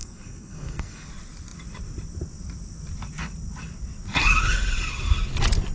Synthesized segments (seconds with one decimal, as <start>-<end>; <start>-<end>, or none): 0.0-1.1